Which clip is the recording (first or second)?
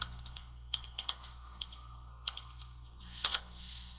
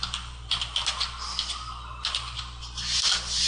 second